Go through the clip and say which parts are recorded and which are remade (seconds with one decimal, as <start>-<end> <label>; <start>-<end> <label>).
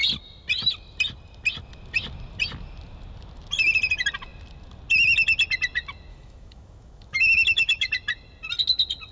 0.0-6.1 recorded; 6.1-7.9 remade; 7.9-9.1 recorded